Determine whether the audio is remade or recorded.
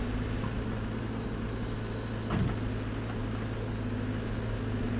recorded